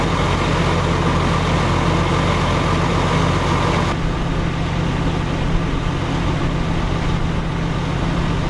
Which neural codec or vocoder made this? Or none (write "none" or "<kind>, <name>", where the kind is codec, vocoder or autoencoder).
none